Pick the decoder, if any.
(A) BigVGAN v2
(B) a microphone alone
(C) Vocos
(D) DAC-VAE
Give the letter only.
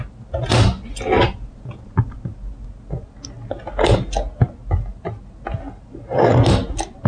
B